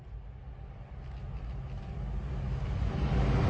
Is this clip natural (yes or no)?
yes